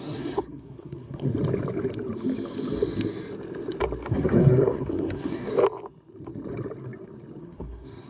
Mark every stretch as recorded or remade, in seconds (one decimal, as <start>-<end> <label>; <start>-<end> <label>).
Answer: 0.0-1.3 remade; 1.3-4.1 recorded; 4.1-5.5 remade; 5.5-7.4 recorded; 7.4-8.1 remade